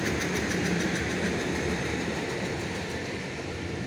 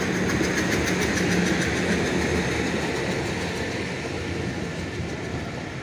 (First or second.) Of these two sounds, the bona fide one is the second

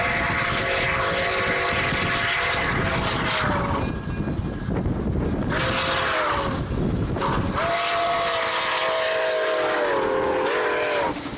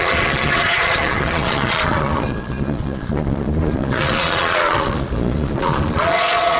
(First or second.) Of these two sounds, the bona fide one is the first